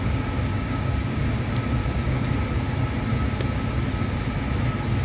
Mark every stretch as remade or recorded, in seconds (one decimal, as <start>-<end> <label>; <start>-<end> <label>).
0.0-0.5 recorded; 0.5-1.2 remade; 1.2-1.8 recorded; 1.8-2.3 remade; 2.3-5.0 recorded